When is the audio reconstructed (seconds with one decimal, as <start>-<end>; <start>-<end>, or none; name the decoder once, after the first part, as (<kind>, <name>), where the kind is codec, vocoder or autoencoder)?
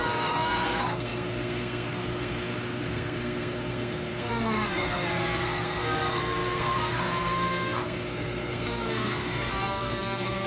0.0-10.5 (codec, SNAC)